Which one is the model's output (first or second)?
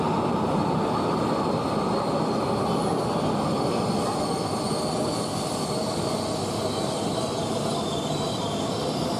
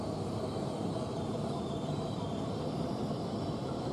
second